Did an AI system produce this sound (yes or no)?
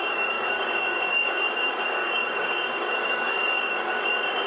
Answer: yes